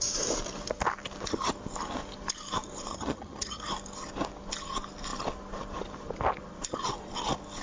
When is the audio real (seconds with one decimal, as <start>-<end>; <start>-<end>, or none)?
0.0-2.9; 3.6-7.6